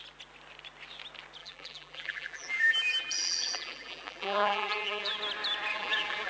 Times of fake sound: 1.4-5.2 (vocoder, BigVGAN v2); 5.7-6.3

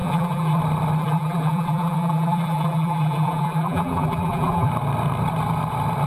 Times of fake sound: 0.0-0.6 (vocoder, BigVGAN v2); 1.0-4.7

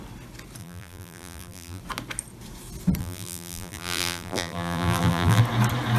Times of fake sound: 0.6-1.8 (vocoder, BigVGAN v2); 3.0-5.4

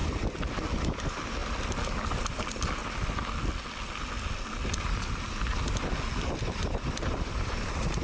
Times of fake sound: 0.8-1.4 (vocoder, BigVGAN v2); 2.2-2.8; 6.4-8.0

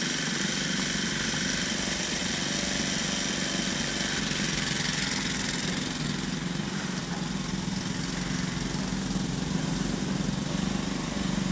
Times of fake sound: 0.0-2.2 (vocoder, BigVGAN v2); 6.6-7.0; 10.7-11.5

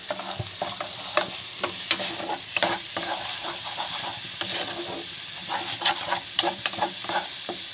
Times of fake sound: 0.5-4.1 (vocoder, BigVGAN v2); 6.3-7.7

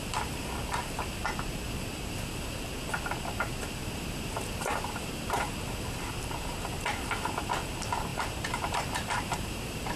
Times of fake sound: 3.8-5.4 (vocoder, BigVGAN v2); 8.1-10.0

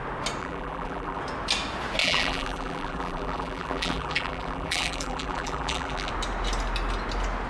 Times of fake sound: 0.4-1.2 (vocoder, BigVGAN v2); 2.0-6.1